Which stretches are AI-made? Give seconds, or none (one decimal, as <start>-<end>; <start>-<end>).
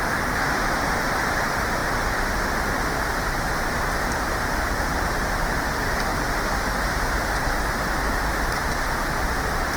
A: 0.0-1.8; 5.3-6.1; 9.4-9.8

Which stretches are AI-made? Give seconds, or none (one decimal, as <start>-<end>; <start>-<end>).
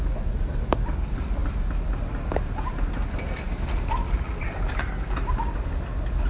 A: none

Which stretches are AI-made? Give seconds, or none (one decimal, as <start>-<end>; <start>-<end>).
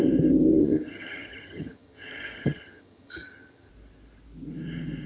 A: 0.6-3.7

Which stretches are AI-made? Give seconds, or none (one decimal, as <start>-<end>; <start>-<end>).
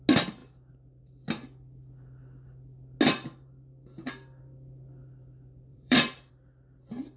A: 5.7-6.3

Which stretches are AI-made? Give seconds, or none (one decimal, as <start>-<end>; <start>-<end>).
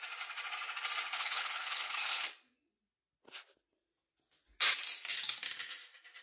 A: 1.1-2.3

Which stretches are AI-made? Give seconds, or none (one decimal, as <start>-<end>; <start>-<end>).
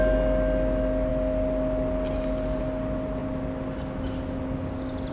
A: none